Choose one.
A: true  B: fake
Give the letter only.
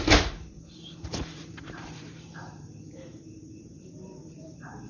B